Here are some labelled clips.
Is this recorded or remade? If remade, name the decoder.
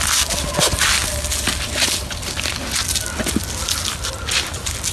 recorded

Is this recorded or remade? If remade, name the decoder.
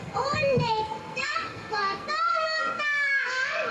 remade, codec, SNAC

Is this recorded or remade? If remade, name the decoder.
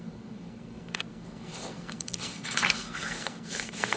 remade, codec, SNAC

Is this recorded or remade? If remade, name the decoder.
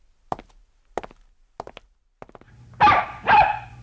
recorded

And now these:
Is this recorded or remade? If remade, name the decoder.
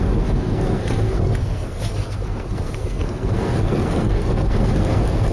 remade, codec, SNAC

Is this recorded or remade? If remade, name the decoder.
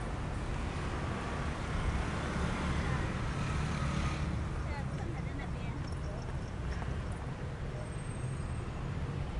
recorded